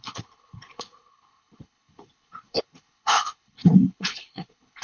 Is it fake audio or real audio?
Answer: fake